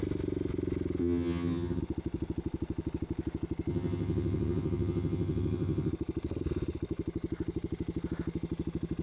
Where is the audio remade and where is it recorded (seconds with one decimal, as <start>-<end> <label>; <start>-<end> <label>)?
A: 0.0-1.0 recorded; 1.0-1.8 remade; 1.8-3.7 recorded; 3.7-5.9 remade; 5.9-9.0 recorded